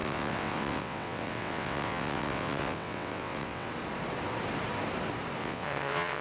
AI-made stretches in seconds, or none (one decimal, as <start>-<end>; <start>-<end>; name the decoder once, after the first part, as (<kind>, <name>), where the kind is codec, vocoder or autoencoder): 0.0-3.7 (vocoder, WaveNeXt); 5.4-6.2